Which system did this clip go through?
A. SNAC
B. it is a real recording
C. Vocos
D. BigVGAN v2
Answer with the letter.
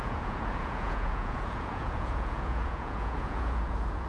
C